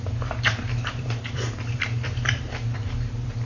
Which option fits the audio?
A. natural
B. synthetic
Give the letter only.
B